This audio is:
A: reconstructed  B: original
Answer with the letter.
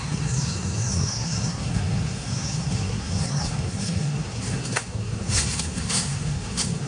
A